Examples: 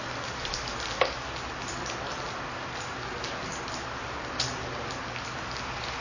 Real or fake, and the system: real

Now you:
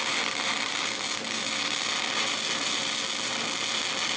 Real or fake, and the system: real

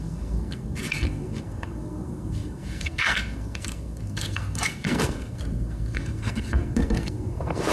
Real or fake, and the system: fake, codec, SNAC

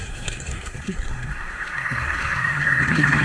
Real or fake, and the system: fake, codec, SNAC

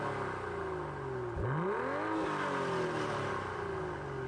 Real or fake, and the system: real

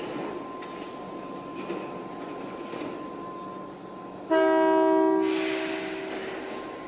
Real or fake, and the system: real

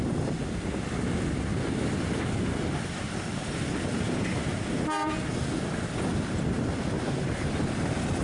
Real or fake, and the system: real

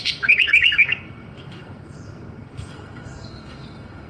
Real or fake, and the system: fake, codec, SNAC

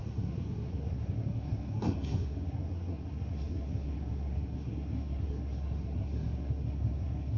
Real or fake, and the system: fake, codec, SNAC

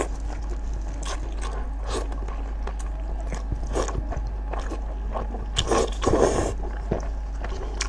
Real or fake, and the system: real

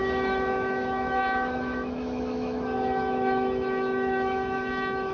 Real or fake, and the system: fake, autoencoder, DAC-VAE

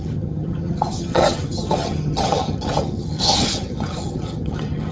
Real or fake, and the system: fake, vocoder, HiFi-GAN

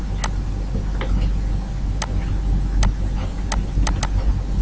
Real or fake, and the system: real